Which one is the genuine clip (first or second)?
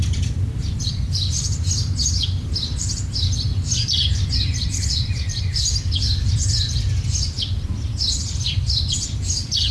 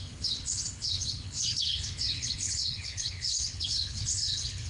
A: first